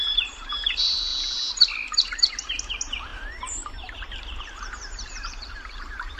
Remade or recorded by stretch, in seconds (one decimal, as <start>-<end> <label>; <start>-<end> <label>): 0.0-1.1 remade; 1.1-2.3 recorded; 2.3-6.2 remade